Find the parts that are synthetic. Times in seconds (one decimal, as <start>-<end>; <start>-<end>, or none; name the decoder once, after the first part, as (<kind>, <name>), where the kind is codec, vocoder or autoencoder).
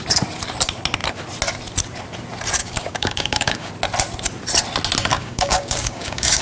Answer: 2.6-3.7 (codec, DAC); 5.1-6.4